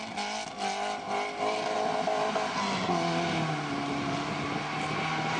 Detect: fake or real real